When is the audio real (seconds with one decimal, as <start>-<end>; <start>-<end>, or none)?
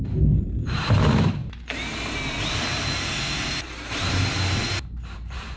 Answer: 1.4-2.3; 2.7-4.8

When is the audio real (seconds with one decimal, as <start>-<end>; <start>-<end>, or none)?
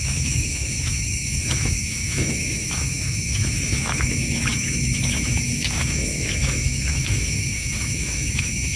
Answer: none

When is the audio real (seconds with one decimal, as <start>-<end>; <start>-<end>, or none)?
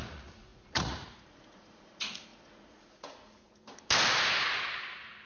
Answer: 3.6-5.3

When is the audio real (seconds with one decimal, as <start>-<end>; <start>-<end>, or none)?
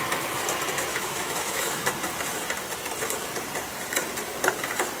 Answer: 0.0-0.9; 1.9-5.0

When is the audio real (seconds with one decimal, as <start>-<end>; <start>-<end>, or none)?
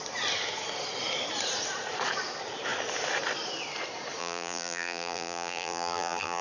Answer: 0.0-4.2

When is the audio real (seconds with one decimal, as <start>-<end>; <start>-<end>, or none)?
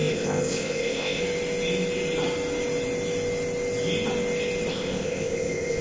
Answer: 1.2-4.7